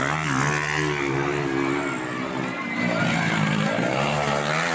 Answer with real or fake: real